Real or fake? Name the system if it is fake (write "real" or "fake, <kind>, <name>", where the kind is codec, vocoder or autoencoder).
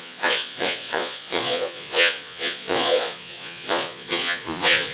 fake, vocoder, Vocos